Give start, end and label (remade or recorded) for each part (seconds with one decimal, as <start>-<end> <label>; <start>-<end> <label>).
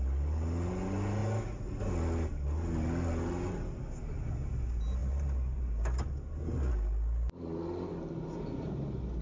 0.0-9.2 recorded